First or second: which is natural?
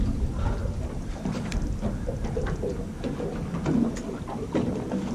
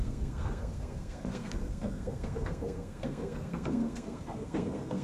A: first